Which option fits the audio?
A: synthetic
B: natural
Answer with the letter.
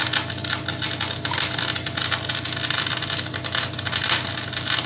B